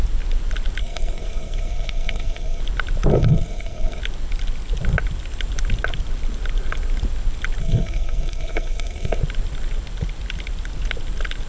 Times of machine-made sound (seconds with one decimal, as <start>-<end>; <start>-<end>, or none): 0.8-2.6; 3.1-4.0; 7.6-9.2